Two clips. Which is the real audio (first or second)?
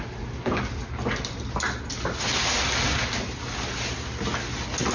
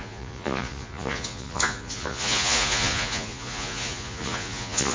first